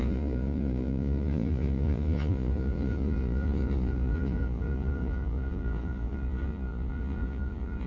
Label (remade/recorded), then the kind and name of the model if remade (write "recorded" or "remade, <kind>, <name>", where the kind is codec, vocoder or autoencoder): remade, vocoder, Vocos